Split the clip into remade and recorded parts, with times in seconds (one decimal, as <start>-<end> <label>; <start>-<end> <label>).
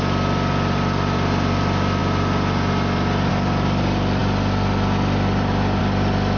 0.0-6.4 recorded